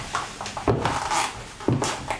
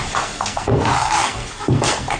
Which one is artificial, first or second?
second